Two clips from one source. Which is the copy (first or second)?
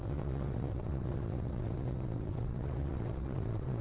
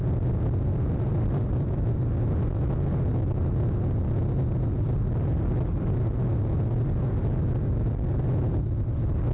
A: first